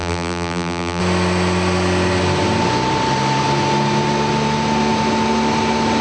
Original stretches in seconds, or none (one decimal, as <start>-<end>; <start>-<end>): 1.0-6.0

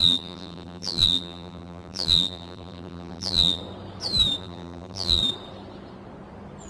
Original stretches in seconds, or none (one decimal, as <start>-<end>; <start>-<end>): 3.6-4.4; 5.2-6.7

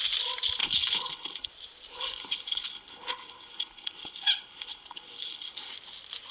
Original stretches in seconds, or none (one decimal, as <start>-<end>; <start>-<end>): 0.0-0.6; 1.5-1.9; 5.7-6.3

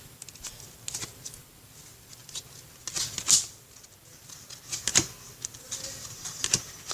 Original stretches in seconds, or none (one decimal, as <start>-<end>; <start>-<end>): 0.0-6.9

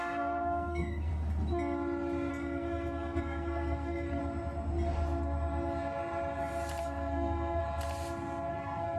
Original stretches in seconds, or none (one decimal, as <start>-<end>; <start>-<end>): 1.1-2.3; 4.2-6.8; 7.6-8.5

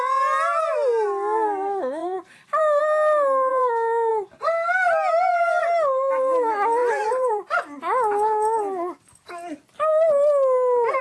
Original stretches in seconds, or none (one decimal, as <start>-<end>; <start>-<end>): 0.0-2.0; 2.8-3.5; 4.1-6.8; 7.8-11.0

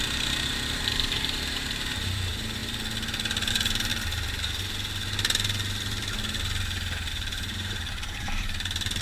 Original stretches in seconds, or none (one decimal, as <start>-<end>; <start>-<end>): 2.6-3.5; 3.9-7.1

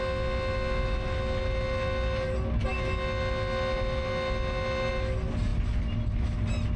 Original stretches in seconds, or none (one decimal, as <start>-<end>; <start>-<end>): 0.0-6.8